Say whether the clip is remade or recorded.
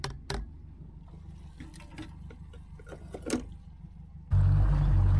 recorded